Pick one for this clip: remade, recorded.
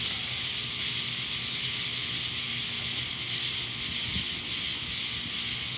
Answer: recorded